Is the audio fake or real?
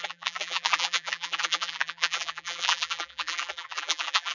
fake